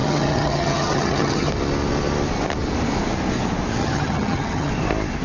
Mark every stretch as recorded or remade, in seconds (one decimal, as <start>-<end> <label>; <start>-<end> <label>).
0.0-1.5 remade; 1.5-3.8 recorded; 3.8-4.7 remade; 4.7-5.2 recorded